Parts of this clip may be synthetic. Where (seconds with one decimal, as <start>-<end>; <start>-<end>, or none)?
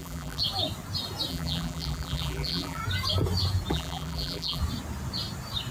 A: 0.0-0.4; 1.3-2.8; 3.7-4.6